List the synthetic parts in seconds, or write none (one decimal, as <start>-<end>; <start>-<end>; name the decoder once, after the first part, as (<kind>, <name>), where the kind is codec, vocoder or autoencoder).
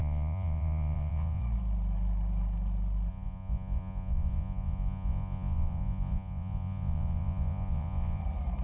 0.0-1.4 (vocoder, Vocos); 3.1-8.2